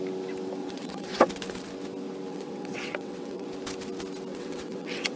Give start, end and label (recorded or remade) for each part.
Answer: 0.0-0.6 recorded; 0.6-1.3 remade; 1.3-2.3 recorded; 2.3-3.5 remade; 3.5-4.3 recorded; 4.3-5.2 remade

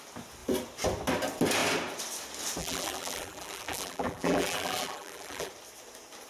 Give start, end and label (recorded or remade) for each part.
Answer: 0.0-2.6 recorded; 2.6-5.5 remade; 5.5-6.3 recorded

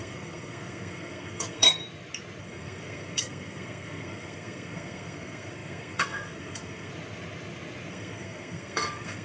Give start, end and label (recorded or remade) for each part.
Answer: 0.0-1.8 remade; 1.8-2.4 recorded; 2.4-6.9 remade; 6.9-7.9 recorded; 7.9-9.2 remade

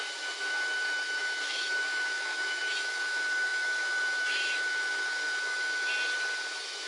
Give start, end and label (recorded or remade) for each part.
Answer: 0.0-5.9 remade; 5.9-6.5 recorded; 6.5-6.9 remade

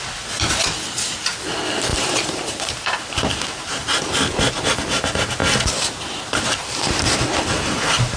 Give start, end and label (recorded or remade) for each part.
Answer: 0.0-1.9 recorded; 1.9-3.8 remade; 3.8-8.2 recorded

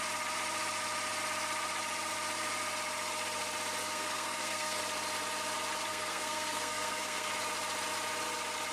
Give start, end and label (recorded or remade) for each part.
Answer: 0.0-3.8 recorded; 3.8-4.8 remade; 4.8-5.9 recorded; 5.9-7.3 remade; 7.3-8.7 recorded

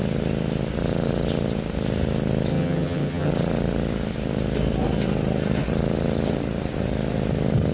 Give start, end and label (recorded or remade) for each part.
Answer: 0.0-2.5 recorded; 2.5-3.3 remade; 3.3-7.7 recorded